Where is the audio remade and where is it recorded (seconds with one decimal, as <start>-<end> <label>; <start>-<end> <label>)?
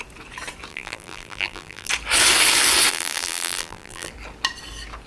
0.0-0.7 recorded; 0.7-1.9 remade; 1.9-2.9 recorded; 2.9-4.1 remade; 4.1-5.1 recorded